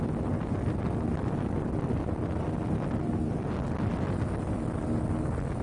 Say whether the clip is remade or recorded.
recorded